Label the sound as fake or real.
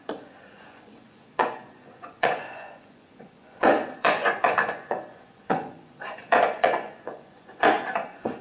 fake